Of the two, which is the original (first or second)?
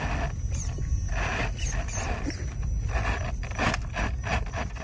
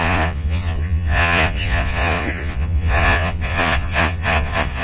first